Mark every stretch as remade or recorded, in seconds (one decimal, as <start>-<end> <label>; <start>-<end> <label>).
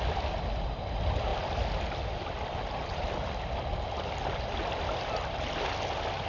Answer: 0.0-6.3 recorded